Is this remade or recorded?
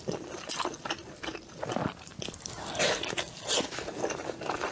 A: recorded